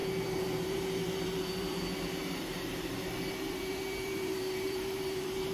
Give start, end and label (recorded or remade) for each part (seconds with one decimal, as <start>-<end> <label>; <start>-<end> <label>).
0.0-5.5 remade

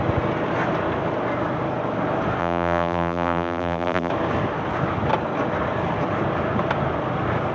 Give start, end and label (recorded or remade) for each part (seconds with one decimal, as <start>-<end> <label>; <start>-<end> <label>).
0.0-2.4 recorded; 2.4-4.1 remade; 4.1-7.5 recorded

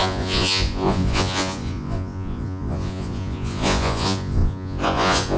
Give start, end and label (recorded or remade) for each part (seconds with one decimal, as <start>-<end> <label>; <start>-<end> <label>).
0.0-5.4 remade

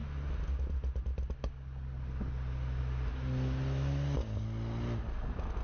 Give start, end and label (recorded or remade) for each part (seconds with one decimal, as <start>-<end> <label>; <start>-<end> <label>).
0.0-5.6 recorded

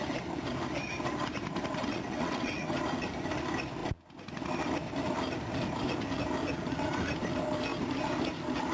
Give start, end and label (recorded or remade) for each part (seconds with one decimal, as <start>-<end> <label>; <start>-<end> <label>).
0.0-1.8 recorded; 1.8-2.7 remade; 2.7-8.7 recorded

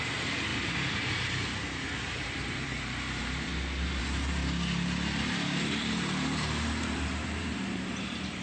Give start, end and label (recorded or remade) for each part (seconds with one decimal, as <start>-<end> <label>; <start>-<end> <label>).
0.0-0.5 remade; 0.5-1.1 recorded; 1.1-3.5 remade; 3.5-4.0 recorded; 4.0-4.4 remade; 4.4-5.6 recorded; 5.6-8.4 remade

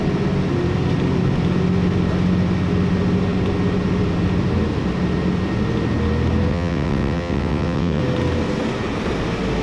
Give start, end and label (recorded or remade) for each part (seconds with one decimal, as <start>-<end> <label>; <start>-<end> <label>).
0.0-6.5 recorded; 6.5-8.0 remade; 8.0-9.6 recorded

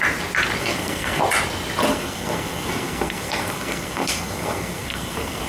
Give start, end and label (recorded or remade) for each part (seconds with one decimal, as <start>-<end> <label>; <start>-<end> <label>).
0.0-0.6 recorded; 0.6-1.2 remade; 1.2-1.9 recorded; 1.9-5.5 remade